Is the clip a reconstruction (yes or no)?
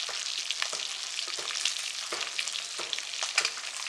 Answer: no